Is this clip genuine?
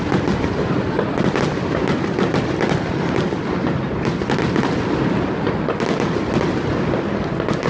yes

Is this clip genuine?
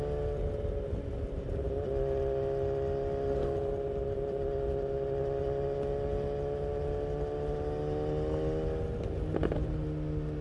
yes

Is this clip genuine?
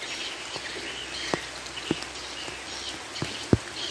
yes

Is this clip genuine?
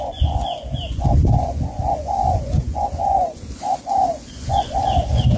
no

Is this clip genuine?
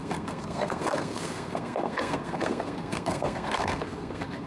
no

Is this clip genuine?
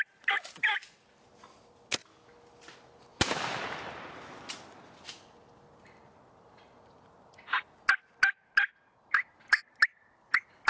yes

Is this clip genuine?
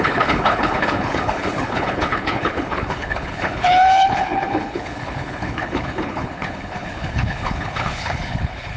no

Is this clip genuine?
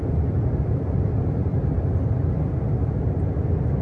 yes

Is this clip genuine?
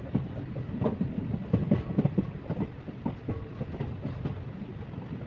yes